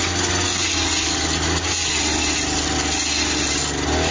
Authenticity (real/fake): real